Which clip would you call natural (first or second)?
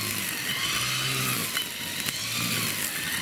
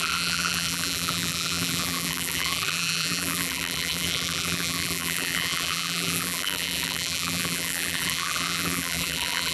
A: first